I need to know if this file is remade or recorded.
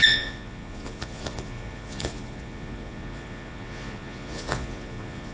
remade